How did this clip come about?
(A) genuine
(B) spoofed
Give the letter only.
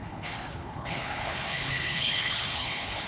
B